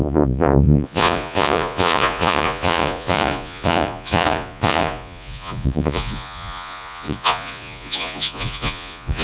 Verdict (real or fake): fake